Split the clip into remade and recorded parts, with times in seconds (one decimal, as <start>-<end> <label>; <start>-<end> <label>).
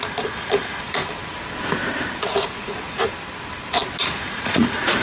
0.0-1.0 remade; 1.0-2.3 recorded; 2.3-3.1 remade; 3.1-4.0 recorded; 4.0-5.0 remade